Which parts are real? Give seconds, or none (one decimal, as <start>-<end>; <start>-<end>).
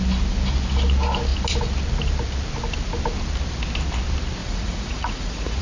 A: 0.0-4.4